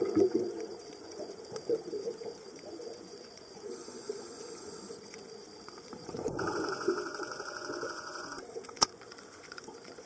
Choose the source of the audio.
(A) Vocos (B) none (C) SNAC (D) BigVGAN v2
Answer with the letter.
A